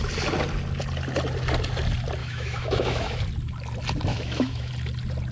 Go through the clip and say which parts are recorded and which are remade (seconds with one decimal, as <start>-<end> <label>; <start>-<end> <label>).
0.0-2.2 recorded; 2.2-3.2 remade; 3.2-4.1 recorded; 4.1-4.7 remade; 4.7-5.3 recorded